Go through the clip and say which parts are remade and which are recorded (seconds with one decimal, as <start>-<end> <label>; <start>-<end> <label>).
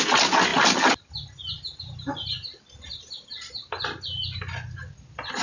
0.0-5.4 recorded